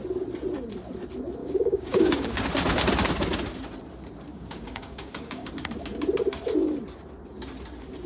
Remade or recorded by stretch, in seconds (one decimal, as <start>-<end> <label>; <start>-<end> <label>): 0.0-1.4 recorded; 1.4-2.4 remade; 2.4-4.3 recorded; 4.3-5.5 remade; 5.5-8.1 recorded